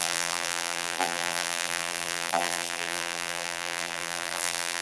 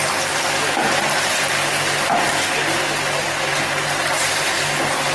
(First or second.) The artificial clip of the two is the first